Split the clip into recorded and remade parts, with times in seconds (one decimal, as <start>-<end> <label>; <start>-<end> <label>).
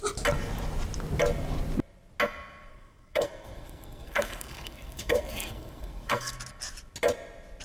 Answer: 0.0-2.7 recorded; 2.7-6.4 remade; 6.4-7.6 recorded